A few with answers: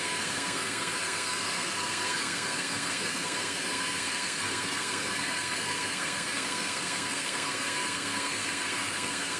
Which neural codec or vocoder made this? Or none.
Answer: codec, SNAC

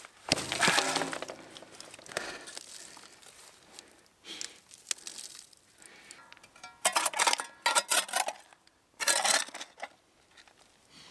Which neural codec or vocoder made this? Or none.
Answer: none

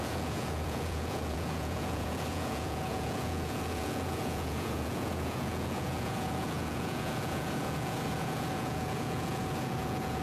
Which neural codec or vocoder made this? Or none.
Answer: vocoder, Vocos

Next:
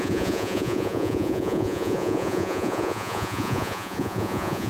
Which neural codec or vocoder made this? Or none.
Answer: vocoder, Vocos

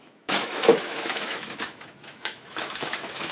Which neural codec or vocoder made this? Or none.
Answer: autoencoder, DAC-VAE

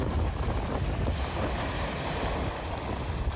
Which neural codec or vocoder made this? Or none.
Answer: none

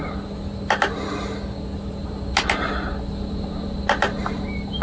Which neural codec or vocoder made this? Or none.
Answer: none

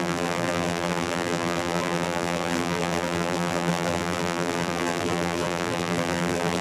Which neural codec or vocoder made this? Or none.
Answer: vocoder, BigVGAN v2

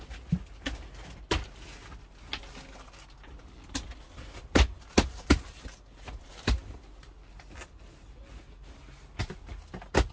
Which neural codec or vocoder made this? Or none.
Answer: none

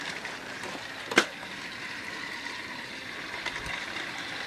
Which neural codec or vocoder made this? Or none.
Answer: vocoder, BigVGAN v2